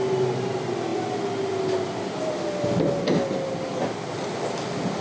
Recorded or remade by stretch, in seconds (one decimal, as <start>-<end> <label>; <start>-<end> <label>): 0.0-5.0 recorded